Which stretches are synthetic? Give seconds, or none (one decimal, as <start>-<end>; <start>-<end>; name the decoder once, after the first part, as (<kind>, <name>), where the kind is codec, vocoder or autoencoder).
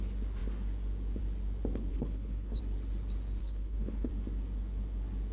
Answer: 1.9-2.6 (codec, HILCodec); 3.4-4.1